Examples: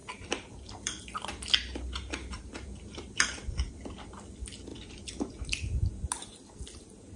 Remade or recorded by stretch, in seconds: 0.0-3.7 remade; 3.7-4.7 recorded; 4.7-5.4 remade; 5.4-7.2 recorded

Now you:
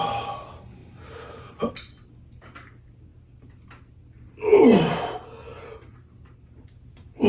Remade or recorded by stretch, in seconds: 0.0-0.8 recorded; 0.8-1.7 remade; 1.7-7.3 recorded

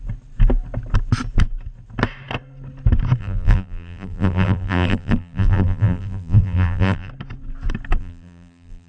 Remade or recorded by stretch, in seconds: 0.0-3.2 recorded; 3.2-7.1 remade; 7.1-8.0 recorded; 8.0-8.9 remade

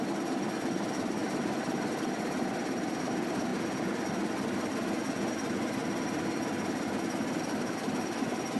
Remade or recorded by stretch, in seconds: 0.0-3.5 remade; 3.5-4.1 recorded; 4.1-8.6 remade

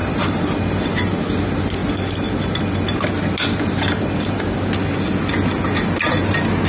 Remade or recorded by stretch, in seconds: 0.0-6.7 recorded

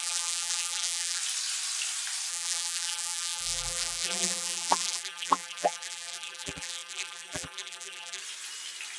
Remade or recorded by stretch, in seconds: 0.0-1.2 remade; 1.2-2.3 recorded; 2.3-8.2 remade; 8.2-9.0 recorded